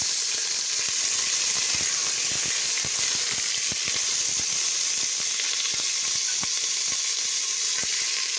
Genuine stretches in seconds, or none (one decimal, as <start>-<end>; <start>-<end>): 0.0-8.4